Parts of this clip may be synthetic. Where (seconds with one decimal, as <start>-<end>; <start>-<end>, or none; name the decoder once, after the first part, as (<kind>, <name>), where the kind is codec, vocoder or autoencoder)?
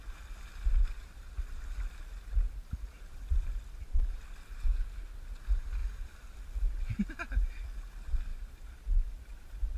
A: none